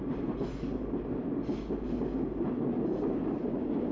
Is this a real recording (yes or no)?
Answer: yes